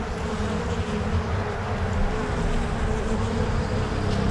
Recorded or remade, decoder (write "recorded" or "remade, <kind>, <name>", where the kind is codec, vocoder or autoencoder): recorded